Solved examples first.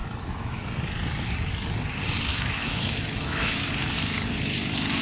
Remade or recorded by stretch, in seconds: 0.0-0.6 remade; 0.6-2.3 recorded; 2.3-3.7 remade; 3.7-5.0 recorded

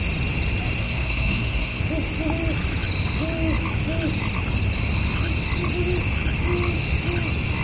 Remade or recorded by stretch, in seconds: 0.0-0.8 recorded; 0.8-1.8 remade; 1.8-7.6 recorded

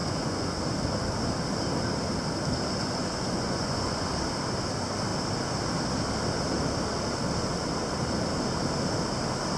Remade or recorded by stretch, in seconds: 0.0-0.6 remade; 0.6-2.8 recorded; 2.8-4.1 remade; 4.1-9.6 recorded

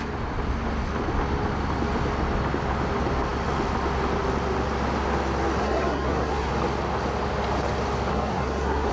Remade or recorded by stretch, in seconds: 0.0-5.6 recorded; 5.6-6.5 remade; 6.5-8.1 recorded; 8.1-8.9 remade